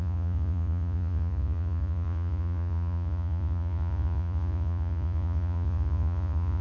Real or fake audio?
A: fake